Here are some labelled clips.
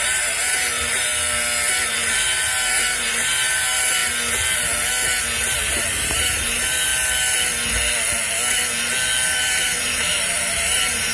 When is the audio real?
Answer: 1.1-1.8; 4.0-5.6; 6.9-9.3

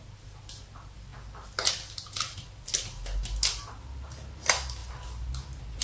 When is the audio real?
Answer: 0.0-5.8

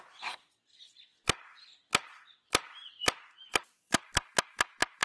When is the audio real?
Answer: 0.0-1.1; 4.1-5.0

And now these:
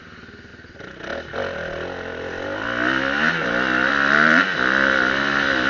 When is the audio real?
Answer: 0.0-5.7